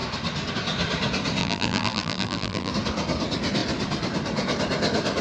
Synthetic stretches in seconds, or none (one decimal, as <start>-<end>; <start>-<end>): 1.4-2.7